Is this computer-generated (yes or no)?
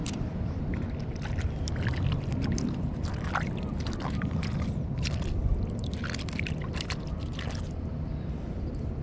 no